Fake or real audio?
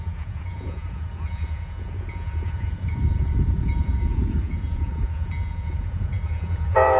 fake